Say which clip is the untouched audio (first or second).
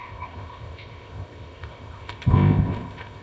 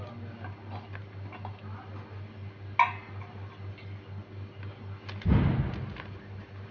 second